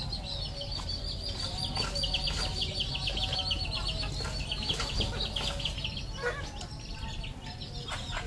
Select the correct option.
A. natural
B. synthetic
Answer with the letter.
A